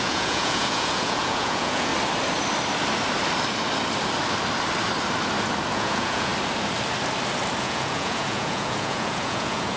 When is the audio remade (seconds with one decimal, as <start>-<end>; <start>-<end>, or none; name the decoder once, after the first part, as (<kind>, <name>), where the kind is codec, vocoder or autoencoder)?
0.0-1.9 (vocoder, Vocos); 5.7-6.3; 7.6-9.8